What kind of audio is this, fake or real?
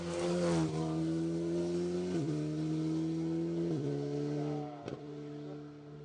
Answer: real